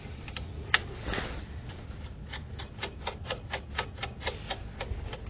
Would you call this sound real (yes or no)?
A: yes